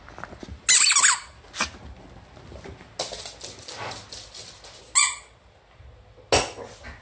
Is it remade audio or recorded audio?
recorded